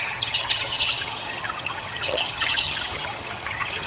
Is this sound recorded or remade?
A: remade